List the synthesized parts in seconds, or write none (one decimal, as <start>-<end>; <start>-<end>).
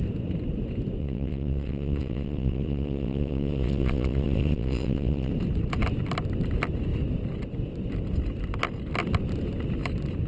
1.0-5.3